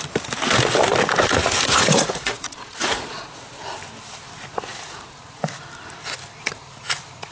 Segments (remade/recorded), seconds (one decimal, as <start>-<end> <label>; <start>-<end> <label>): 0.0-1.4 recorded; 1.4-3.7 remade; 3.7-4.5 recorded; 4.5-5.5 remade; 5.5-7.3 recorded